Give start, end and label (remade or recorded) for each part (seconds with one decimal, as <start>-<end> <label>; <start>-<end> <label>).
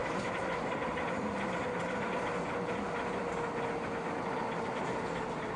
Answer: 0.0-5.6 recorded